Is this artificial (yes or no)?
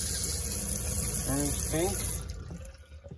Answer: no